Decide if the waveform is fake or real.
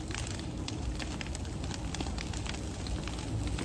real